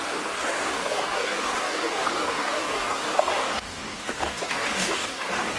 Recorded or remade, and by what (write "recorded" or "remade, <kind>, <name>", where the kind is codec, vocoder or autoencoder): remade, codec, DAC